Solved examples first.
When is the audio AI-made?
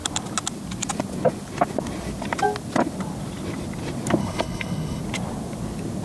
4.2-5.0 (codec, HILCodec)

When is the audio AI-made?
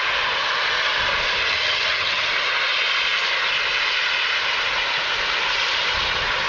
1.4-2.3 (vocoder, HiFi-GAN)